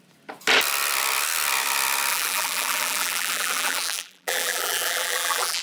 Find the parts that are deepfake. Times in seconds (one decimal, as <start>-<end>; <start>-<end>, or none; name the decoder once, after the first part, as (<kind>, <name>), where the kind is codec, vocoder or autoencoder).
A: 2.1-5.6 (vocoder, BigVGAN v2)